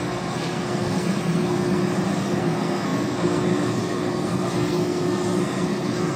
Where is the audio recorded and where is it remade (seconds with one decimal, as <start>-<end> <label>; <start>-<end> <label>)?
0.0-1.8 remade; 1.8-2.4 recorded; 2.4-6.2 remade